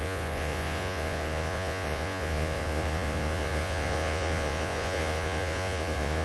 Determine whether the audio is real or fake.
fake